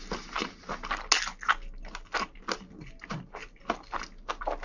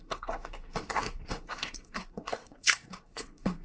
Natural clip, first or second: first